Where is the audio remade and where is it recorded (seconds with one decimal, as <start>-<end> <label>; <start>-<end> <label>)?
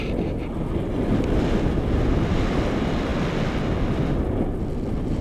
0.0-5.2 recorded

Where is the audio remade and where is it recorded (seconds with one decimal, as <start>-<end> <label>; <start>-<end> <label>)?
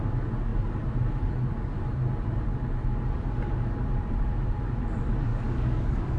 0.0-5.3 recorded; 5.3-6.2 remade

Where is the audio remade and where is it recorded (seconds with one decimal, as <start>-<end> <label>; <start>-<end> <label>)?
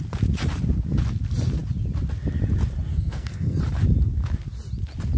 0.0-2.9 recorded; 2.9-3.6 remade; 3.6-5.2 recorded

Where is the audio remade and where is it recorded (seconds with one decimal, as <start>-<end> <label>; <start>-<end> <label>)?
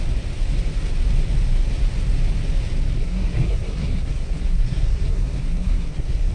0.0-3.0 recorded; 3.0-6.3 remade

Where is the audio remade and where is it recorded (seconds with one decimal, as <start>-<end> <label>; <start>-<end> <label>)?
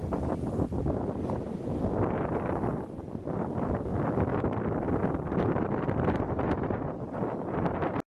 0.0-8.1 recorded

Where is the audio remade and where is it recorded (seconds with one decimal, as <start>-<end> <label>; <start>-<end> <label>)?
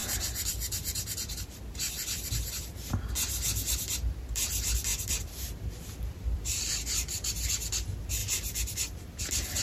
0.0-4.9 recorded; 4.9-6.7 remade; 6.7-9.6 recorded